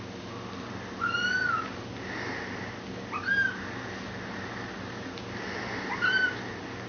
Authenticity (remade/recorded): recorded